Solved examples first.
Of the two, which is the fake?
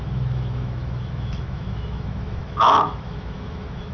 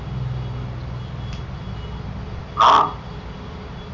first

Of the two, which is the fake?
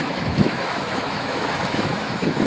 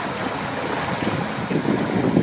first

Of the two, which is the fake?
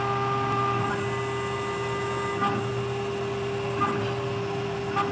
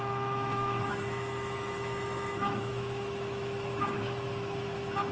second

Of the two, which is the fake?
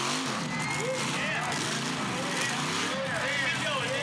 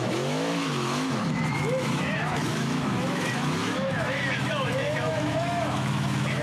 second